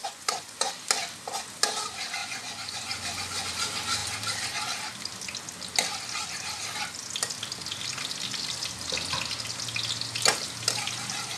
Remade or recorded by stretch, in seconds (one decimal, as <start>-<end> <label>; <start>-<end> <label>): 0.0-0.7 remade; 0.7-2.2 recorded; 2.2-3.5 remade; 3.5-11.4 recorded

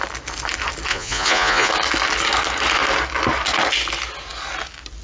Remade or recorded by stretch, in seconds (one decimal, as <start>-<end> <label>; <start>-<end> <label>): 0.0-0.9 recorded; 0.9-1.7 remade; 1.7-5.0 recorded

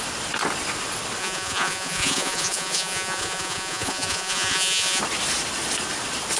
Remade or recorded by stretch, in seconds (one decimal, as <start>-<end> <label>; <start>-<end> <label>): 0.0-1.2 recorded; 1.2-5.0 remade; 5.0-6.4 recorded

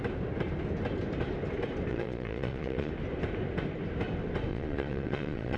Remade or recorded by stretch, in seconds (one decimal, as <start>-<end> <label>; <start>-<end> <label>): 0.0-1.9 recorded; 1.9-2.9 remade; 2.9-4.5 recorded; 4.5-5.6 remade

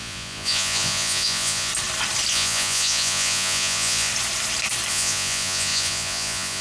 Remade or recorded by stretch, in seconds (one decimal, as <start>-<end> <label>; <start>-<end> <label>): 0.0-1.7 remade; 1.7-2.3 recorded; 2.3-4.1 remade; 4.1-4.9 recorded; 4.9-6.6 remade

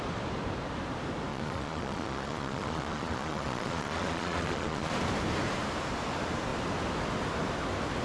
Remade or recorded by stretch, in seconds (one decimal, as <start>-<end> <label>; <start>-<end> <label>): 0.0-1.3 recorded; 1.3-4.9 remade; 4.9-8.0 recorded

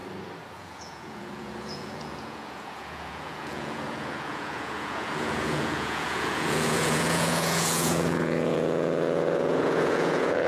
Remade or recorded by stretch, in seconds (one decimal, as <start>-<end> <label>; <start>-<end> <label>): 0.0-0.5 recorded; 0.5-10.5 remade